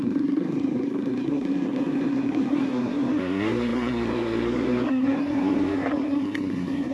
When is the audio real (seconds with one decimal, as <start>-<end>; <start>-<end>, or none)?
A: none